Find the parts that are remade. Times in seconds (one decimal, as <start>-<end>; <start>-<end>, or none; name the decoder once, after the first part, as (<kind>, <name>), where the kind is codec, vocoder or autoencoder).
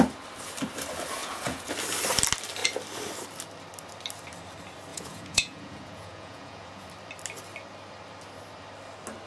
1.2-1.7 (vocoder, Vocos); 4.9-6.9